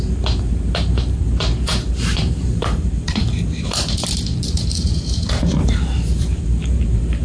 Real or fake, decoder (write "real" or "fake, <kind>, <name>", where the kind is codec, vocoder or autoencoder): fake, vocoder, BigVGAN v2